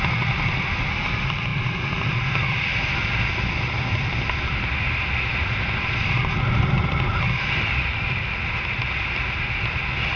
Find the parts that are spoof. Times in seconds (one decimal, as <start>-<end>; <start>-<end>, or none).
none